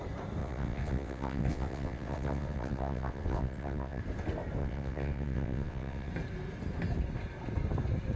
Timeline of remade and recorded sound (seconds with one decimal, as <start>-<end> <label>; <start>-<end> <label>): 0.0-0.4 recorded; 0.4-4.0 remade; 4.0-4.6 recorded; 4.6-6.1 remade; 6.1-8.2 recorded